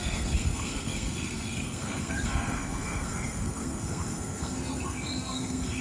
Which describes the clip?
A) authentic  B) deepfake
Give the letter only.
B